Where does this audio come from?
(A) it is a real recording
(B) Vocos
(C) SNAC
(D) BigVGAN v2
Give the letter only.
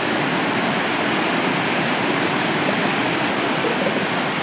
A